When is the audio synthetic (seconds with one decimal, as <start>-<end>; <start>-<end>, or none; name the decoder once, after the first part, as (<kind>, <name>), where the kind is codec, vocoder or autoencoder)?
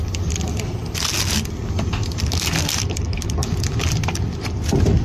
none